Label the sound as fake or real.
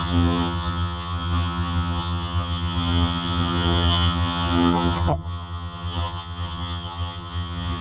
fake